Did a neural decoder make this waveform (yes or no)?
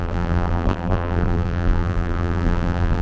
yes